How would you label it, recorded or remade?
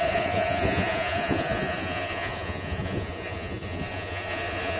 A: remade